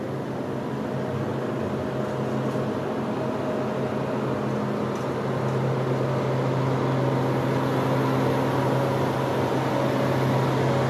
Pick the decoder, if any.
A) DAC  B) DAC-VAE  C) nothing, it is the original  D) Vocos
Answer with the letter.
C